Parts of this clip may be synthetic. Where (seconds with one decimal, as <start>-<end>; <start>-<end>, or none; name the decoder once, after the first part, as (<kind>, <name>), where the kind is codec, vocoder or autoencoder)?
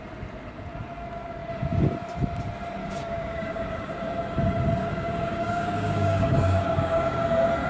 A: 2.8-3.9 (codec, DAC); 4.8-7.2